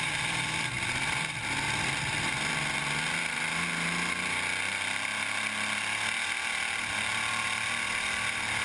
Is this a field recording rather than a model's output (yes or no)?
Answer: yes